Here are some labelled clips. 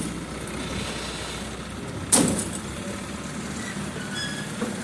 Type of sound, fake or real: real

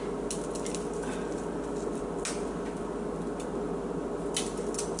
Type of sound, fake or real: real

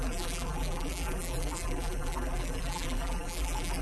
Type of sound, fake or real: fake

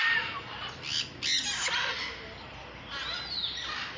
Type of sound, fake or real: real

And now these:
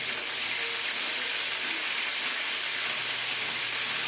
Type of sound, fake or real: real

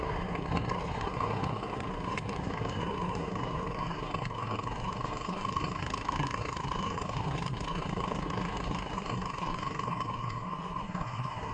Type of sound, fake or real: fake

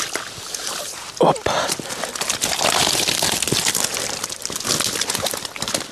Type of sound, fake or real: real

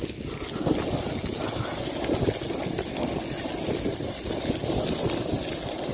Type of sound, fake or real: real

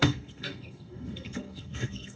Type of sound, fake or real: fake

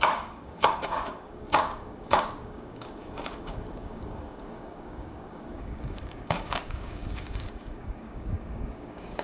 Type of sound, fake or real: fake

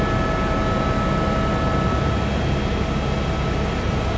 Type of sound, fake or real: real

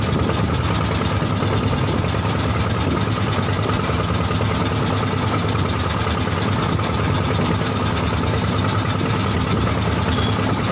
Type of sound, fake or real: real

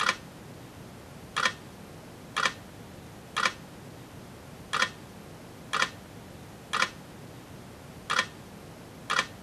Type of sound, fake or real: real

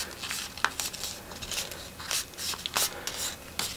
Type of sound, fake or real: real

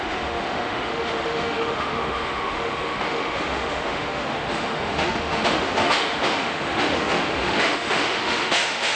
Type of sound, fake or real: fake